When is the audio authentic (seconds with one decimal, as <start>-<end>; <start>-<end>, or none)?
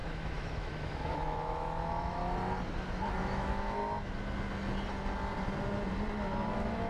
2.2-3.2; 3.8-6.5